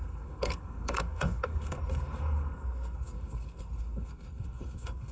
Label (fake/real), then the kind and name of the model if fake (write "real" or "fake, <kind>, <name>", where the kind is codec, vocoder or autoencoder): fake, codec, SNAC